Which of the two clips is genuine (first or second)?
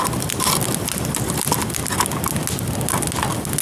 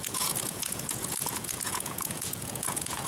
first